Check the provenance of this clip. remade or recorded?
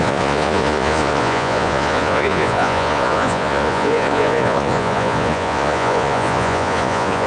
remade